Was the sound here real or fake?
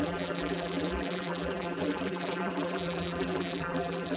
fake